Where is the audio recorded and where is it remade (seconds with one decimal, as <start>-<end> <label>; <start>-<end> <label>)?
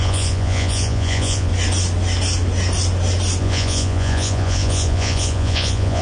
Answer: 0.0-1.5 remade; 1.5-3.4 recorded; 3.4-6.0 remade